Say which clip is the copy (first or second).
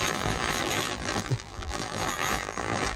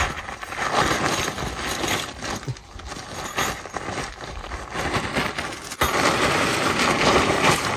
first